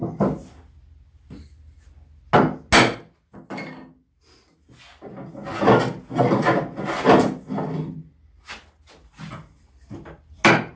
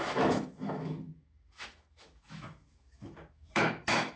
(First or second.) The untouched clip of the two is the first